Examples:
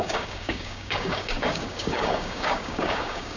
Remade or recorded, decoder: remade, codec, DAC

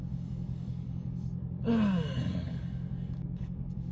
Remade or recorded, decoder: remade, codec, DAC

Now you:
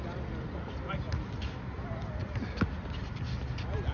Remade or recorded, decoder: recorded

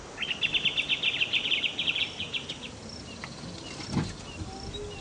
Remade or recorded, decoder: recorded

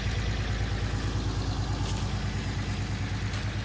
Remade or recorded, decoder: recorded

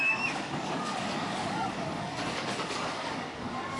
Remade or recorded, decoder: remade, codec, DAC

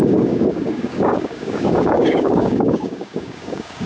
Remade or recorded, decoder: remade, codec, DAC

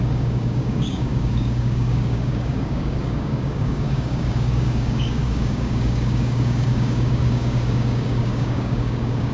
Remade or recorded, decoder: remade, codec, DAC